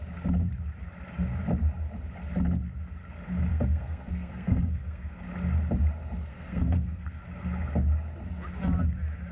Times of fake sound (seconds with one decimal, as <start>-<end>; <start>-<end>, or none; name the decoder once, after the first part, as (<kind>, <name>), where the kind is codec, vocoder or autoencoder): 3.5-5.2 (codec, SNAC); 6.3-7.2